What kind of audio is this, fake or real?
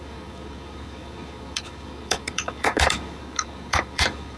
fake